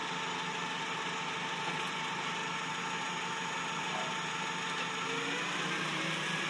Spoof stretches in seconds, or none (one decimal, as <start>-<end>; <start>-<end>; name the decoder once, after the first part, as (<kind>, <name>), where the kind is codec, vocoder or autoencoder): 1.9-2.4 (vocoder, BigVGAN v2); 5.6-6.5